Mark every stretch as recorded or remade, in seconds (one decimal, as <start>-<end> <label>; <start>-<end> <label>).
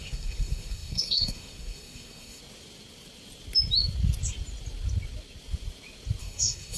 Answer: 0.0-2.4 remade; 2.4-6.2 recorded; 6.2-6.8 remade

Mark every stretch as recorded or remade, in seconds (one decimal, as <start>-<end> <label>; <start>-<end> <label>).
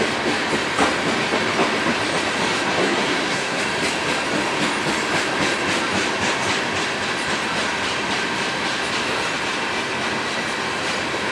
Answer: 0.0-2.8 recorded; 2.8-3.6 remade; 3.6-11.3 recorded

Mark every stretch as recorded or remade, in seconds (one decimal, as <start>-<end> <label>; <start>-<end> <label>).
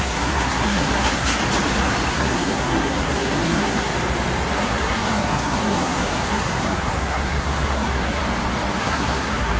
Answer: 0.0-1.4 remade; 1.4-2.1 recorded; 2.1-3.9 remade; 3.9-4.5 recorded; 4.5-8.2 remade; 8.2-8.8 recorded; 8.8-9.6 remade